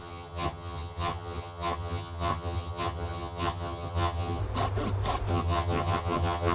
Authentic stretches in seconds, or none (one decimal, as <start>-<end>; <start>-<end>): 4.4-5.3